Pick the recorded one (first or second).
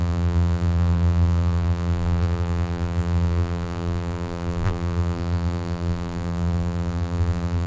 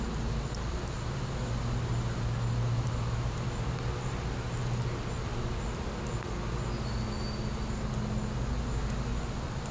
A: second